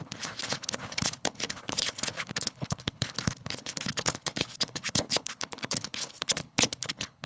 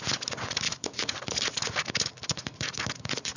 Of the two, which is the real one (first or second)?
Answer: second